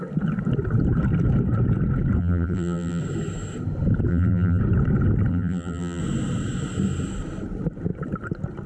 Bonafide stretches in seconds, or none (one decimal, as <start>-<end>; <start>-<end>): 0.0-2.2; 3.0-4.1; 4.6-5.3; 6.0-8.7